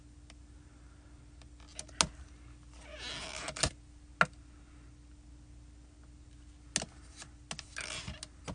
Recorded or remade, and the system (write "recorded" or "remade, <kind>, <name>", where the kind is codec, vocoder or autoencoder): recorded